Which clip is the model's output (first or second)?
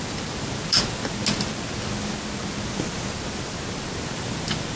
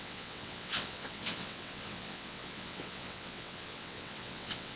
second